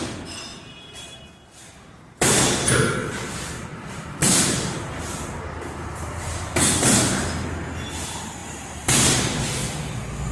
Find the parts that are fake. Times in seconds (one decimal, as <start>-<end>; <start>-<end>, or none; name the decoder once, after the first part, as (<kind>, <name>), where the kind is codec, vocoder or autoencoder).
0.5-1.2 (vocoder, BigVGAN v2); 3.0-7.3; 8.4-9.4